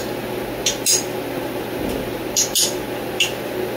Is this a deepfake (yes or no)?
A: no